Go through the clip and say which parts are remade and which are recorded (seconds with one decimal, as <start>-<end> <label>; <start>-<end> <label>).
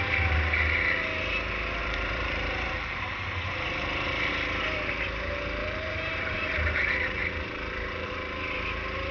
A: 0.0-1.8 recorded; 1.8-4.3 remade; 4.3-5.6 recorded; 5.6-8.4 remade; 8.4-9.1 recorded